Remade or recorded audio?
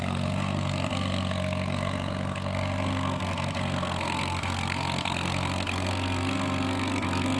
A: remade